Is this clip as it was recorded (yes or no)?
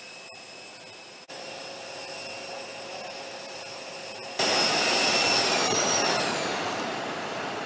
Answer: yes